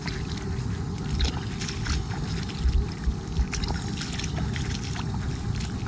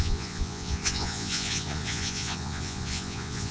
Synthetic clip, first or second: second